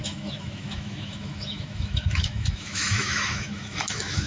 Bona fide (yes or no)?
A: no